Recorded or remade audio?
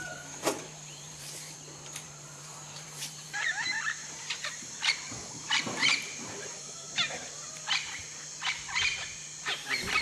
remade